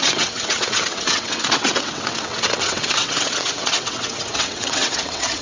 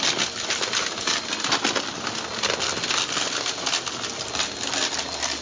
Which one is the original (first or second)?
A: second